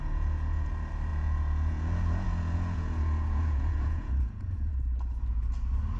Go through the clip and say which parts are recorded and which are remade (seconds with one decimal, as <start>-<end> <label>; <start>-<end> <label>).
0.0-0.7 remade; 0.7-1.1 recorded; 1.1-4.7 remade; 4.7-6.0 recorded